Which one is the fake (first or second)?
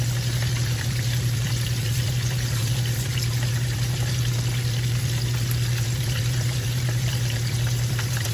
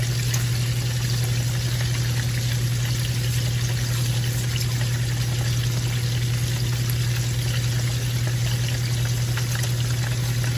first